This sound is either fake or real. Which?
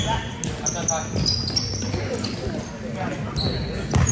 real